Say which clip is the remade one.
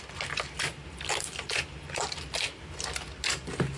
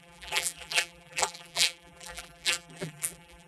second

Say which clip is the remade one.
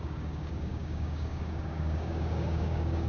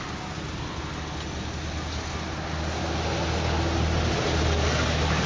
first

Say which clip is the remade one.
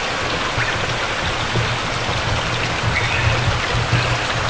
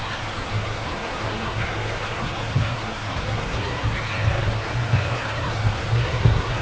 second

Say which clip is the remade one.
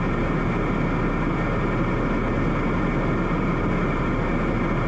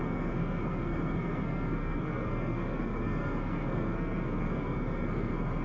second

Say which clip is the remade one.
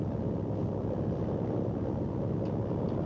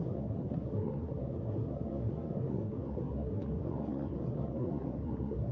second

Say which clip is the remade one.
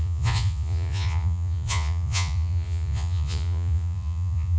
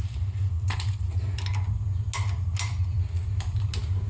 first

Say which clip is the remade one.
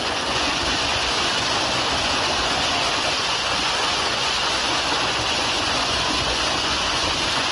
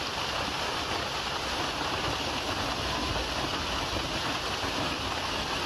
first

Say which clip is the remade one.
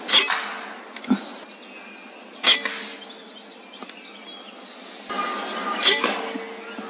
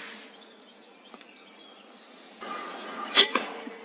second